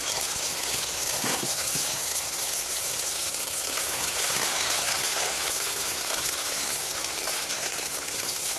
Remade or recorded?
remade